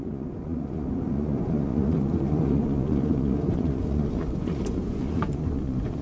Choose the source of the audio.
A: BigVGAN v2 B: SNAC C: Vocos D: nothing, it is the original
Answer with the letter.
C